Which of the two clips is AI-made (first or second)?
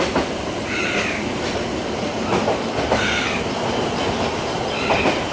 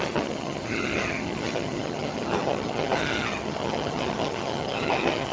second